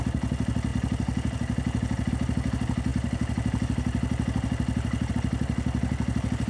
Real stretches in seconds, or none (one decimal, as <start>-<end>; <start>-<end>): 0.0-6.5